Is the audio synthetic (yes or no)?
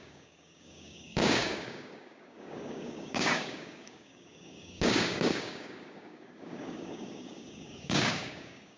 yes